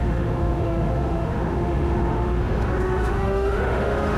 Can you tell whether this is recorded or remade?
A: remade